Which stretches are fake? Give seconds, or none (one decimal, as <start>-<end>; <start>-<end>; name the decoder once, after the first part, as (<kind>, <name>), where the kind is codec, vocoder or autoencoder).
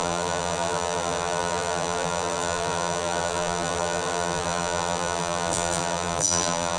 0.0-6.8 (vocoder, BigVGAN v2)